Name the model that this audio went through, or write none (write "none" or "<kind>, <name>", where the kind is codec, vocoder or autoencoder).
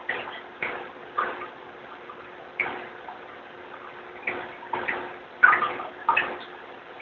none